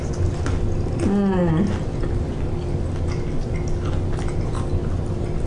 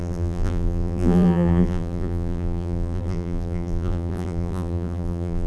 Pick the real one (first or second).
first